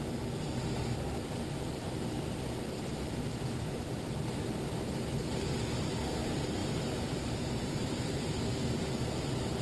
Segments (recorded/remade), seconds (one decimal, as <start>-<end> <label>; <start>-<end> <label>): 0.0-1.8 recorded; 1.8-5.2 remade; 5.2-6.6 recorded; 6.6-8.9 remade; 8.9-9.6 recorded